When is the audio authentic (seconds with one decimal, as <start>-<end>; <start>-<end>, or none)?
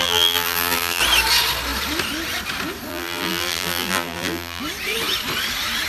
1.0-2.9; 4.6-5.9